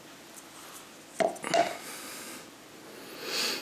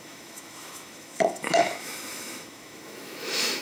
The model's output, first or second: second